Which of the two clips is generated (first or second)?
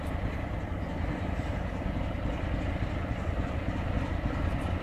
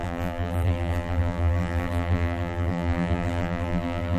second